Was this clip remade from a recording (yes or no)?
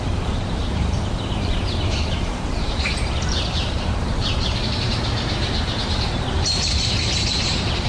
yes